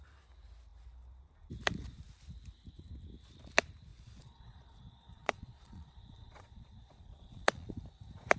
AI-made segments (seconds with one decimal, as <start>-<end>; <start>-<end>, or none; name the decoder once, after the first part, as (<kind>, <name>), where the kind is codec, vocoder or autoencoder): 3.9-7.8 (vocoder, Vocos)

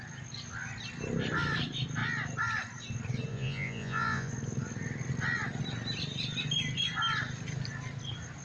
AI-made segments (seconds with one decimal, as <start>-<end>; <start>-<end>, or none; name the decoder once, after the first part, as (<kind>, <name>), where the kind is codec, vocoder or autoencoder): 3.3-4.3 (vocoder, Vocos)

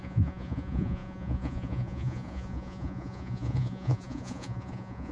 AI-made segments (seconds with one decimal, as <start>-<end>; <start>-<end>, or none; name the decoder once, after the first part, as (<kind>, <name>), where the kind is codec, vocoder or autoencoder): 0.0-5.1 (vocoder, Vocos)

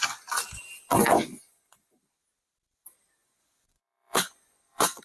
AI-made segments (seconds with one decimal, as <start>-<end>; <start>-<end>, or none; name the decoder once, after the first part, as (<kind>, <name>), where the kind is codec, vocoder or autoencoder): 0.9-1.9 (vocoder, Vocos); 3.2-5.0

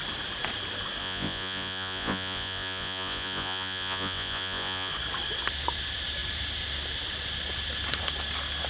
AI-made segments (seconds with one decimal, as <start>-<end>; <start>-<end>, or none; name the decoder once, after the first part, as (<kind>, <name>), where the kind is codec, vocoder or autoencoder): 1.0-4.9 (vocoder, Vocos)

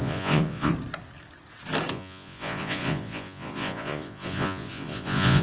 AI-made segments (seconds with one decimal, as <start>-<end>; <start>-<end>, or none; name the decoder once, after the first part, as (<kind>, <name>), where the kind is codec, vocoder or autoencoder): 0.0-0.7 (vocoder, Vocos); 1.9-5.4